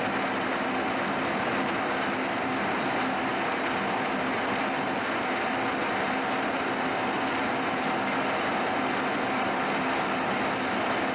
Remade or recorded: recorded